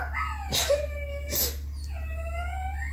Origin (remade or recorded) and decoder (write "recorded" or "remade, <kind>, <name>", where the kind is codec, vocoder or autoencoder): recorded